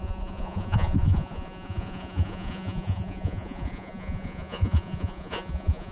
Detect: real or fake fake